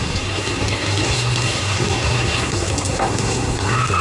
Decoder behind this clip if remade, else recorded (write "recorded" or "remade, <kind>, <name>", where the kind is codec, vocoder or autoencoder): remade, codec, SNAC